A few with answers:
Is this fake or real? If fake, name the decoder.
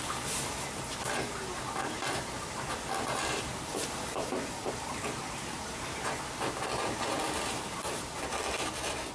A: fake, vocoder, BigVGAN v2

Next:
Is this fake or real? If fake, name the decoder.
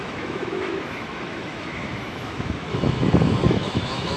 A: fake, autoencoder, DAC-VAE